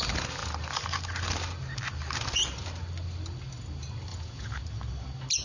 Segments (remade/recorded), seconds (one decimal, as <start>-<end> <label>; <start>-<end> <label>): 0.0-4.1 recorded; 4.1-4.6 remade; 4.6-5.4 recorded

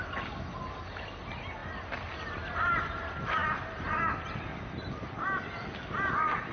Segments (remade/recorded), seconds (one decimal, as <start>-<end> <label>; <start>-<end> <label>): 0.0-6.5 recorded

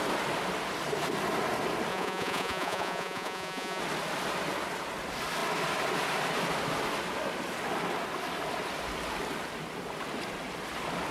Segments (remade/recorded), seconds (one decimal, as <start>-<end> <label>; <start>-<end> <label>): 0.0-1.9 recorded; 1.9-3.8 remade; 3.8-11.1 recorded

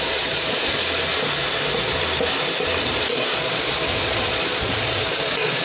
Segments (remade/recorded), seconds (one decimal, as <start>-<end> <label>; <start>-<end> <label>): 0.0-0.8 remade; 0.8-2.8 recorded; 2.8-5.6 remade

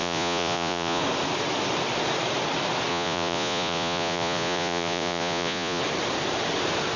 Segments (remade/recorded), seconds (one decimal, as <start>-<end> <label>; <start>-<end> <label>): 0.0-1.0 remade; 1.0-2.9 recorded; 2.9-5.8 remade; 5.8-7.0 recorded